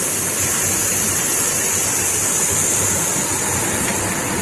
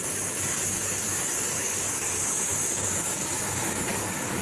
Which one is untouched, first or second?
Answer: first